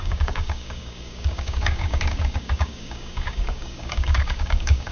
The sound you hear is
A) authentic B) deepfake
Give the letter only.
B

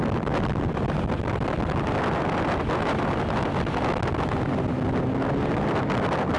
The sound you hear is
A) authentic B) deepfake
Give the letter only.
A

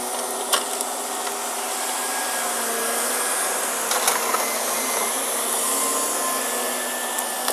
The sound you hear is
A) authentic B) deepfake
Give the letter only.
A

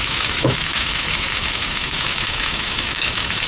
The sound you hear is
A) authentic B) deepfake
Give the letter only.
B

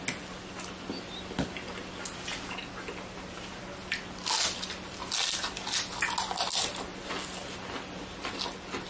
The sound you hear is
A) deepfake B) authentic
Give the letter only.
B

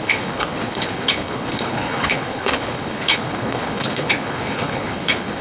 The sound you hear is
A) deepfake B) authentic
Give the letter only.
A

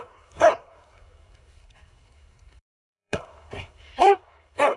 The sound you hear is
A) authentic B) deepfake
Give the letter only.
B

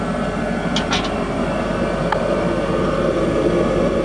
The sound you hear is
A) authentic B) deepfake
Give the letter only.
A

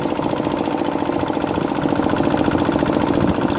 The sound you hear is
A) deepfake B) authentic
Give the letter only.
B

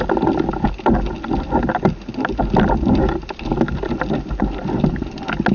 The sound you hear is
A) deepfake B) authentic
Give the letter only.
B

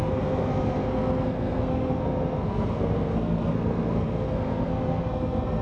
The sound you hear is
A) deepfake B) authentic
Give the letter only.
A